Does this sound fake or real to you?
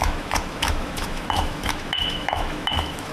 fake